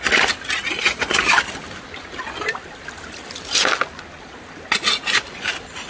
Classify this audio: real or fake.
real